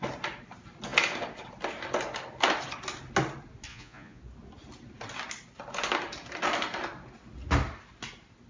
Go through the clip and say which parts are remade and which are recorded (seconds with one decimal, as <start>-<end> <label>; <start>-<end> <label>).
0.0-3.7 recorded; 3.7-4.2 remade; 4.2-8.5 recorded